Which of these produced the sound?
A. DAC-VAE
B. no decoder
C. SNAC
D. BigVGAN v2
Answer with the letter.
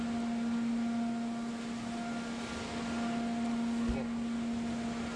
B